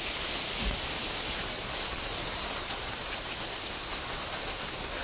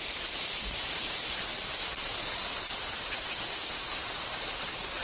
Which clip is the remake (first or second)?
second